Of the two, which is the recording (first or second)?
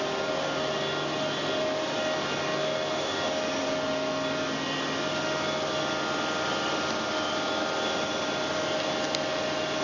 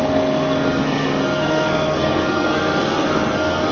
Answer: first